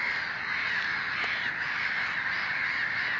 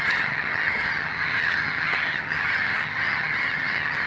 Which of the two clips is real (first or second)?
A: first